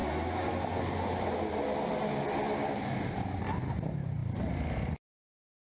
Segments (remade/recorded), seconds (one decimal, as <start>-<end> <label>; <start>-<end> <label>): 0.0-5.6 recorded